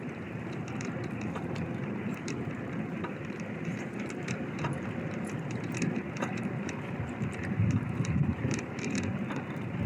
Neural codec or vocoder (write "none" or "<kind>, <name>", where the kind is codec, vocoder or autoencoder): vocoder, BigVGAN v2